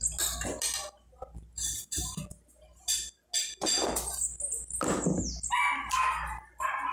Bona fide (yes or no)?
yes